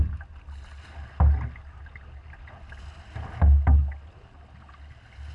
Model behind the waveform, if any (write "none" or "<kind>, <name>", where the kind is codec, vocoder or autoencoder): none